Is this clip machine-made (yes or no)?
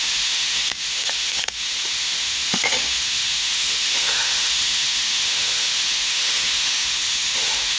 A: yes